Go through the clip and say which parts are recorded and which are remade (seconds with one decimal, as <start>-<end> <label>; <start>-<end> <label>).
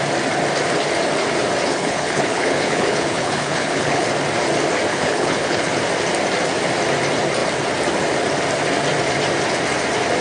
0.0-1.7 recorded; 1.7-4.1 remade; 4.1-4.9 recorded; 4.9-5.7 remade; 5.7-10.2 recorded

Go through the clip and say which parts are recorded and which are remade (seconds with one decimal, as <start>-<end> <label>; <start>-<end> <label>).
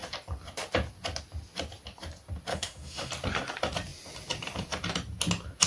0.0-2.5 recorded; 2.5-3.1 remade; 3.1-5.7 recorded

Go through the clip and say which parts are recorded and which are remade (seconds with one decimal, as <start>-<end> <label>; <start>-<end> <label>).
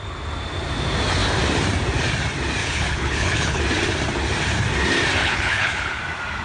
0.0-2.6 recorded; 2.6-3.6 remade; 3.6-5.2 recorded; 5.2-6.0 remade; 6.0-6.4 recorded